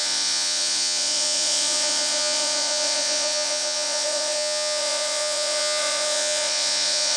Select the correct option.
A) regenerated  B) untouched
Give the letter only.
A